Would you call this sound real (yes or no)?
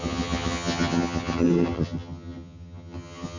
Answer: no